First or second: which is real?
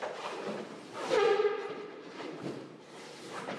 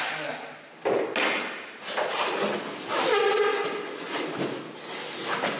second